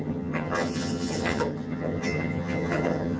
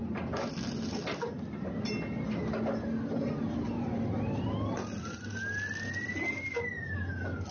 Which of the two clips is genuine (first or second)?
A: second